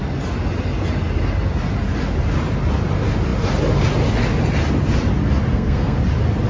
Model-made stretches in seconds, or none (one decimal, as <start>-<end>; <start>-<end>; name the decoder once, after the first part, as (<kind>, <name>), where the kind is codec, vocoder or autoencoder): 5.5-6.0 (codec, SNAC)